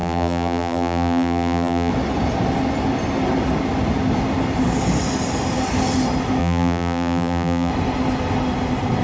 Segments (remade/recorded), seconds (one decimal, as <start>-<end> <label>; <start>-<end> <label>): 0.0-1.9 remade; 1.9-6.4 recorded; 6.4-7.7 remade; 7.7-9.0 recorded